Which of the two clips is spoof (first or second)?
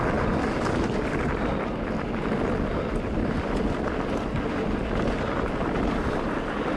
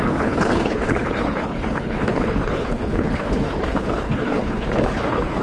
second